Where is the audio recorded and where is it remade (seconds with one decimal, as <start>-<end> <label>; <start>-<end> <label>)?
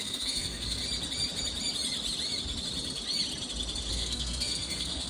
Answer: 0.0-0.8 remade; 0.8-3.9 recorded; 3.9-5.1 remade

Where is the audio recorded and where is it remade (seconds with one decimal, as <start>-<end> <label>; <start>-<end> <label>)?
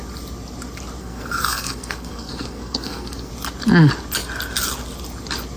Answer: 0.0-1.0 recorded; 1.0-3.3 remade; 3.3-5.6 recorded